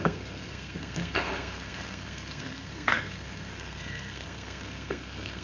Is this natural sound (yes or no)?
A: no